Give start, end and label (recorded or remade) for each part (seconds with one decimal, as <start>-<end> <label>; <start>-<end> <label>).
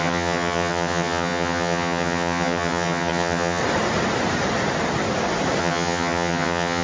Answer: 0.0-3.6 remade; 3.6-5.6 recorded; 5.6-6.8 remade